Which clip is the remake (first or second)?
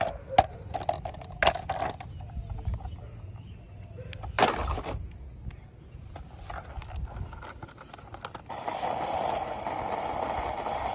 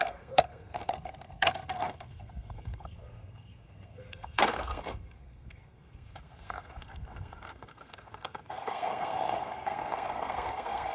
second